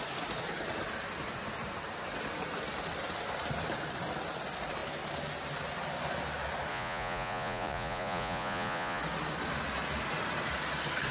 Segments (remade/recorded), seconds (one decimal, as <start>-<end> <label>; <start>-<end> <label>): 0.0-6.7 recorded; 6.7-9.0 remade; 9.0-11.1 recorded